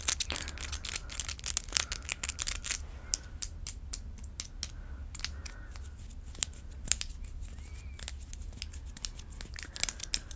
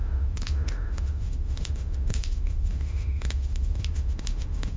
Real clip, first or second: first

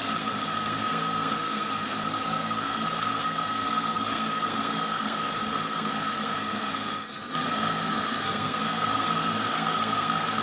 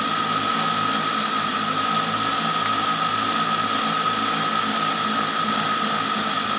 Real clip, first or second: second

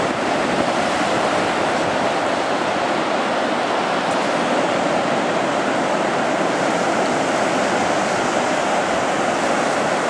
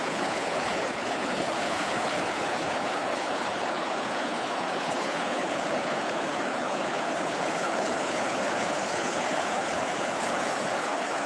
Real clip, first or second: first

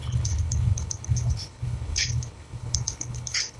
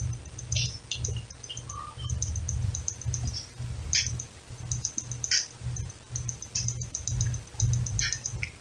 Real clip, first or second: second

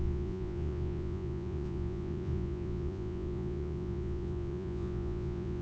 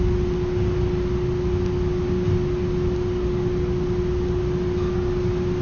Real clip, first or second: second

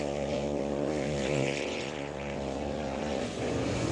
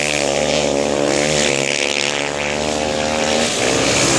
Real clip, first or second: second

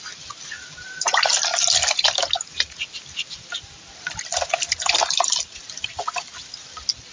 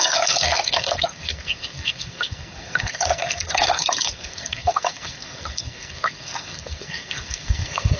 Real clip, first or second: first